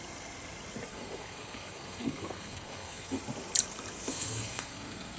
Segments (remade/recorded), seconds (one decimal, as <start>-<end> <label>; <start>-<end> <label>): 0.0-0.9 recorded; 0.9-3.2 remade; 3.2-4.1 recorded; 4.1-5.2 remade